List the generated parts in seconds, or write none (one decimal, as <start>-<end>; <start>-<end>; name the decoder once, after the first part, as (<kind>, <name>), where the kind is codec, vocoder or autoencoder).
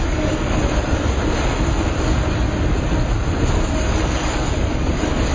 0.0-0.6 (codec, DAC); 3.8-5.3